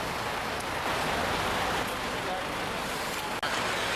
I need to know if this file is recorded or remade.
recorded